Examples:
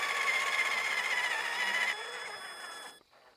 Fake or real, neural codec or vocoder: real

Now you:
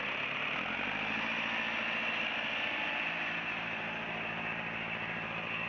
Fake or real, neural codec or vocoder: real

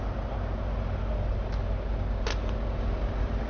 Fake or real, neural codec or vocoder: real